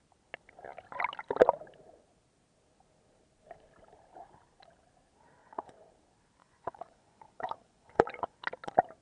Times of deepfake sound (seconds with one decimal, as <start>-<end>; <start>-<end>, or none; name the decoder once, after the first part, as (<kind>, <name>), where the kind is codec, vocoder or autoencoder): 5.4-5.9 (vocoder, Vocos); 6.4-8.4